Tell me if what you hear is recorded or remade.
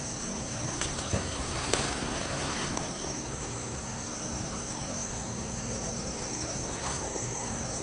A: remade